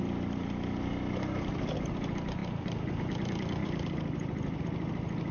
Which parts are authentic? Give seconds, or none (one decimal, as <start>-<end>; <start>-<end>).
0.0-2.4; 3.0-3.6; 4.6-5.3